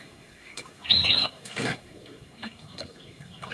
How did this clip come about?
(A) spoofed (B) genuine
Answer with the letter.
A